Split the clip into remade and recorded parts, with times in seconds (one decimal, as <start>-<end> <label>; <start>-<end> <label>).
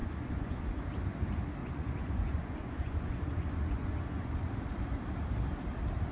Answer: 0.0-0.8 remade; 0.8-1.6 recorded; 1.6-4.5 remade; 4.5-6.1 recorded